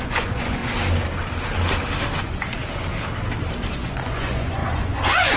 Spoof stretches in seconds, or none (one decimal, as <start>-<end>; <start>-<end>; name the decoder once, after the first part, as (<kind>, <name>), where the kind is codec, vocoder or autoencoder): 0.0-0.6 (vocoder, Vocos); 2.2-2.6; 3.7-5.4